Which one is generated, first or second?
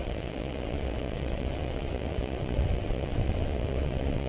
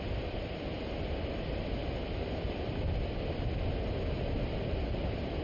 first